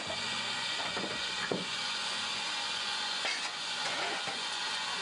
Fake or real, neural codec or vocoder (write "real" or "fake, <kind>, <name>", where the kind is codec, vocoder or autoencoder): fake, vocoder, Vocos